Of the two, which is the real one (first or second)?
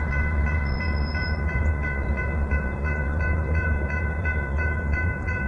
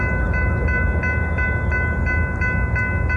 second